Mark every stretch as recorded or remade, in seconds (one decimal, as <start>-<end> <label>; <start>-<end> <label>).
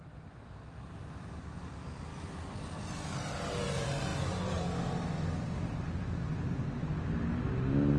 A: 0.0-8.0 recorded